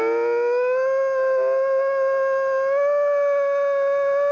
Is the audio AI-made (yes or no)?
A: no